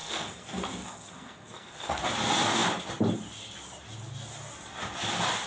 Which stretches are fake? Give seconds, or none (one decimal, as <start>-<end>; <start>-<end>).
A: 0.0-2.0